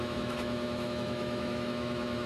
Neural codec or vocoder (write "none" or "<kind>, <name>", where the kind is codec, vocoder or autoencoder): autoencoder, DAC-VAE